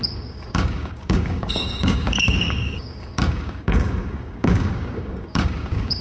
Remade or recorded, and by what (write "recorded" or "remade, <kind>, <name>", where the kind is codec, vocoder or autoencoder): remade, codec, DAC